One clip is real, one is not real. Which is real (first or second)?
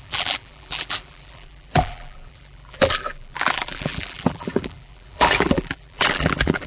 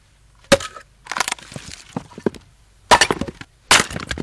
second